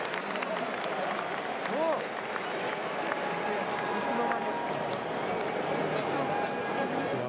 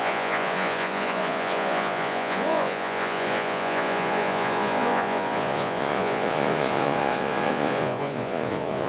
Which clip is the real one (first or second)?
first